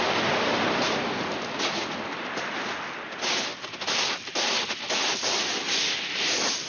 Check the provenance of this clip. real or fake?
real